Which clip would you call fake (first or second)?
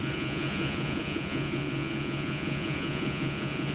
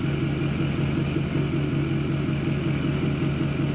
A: first